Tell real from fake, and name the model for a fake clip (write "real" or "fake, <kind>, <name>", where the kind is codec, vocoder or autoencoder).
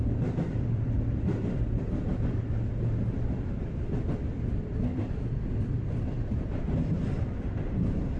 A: fake, vocoder, BigVGAN v2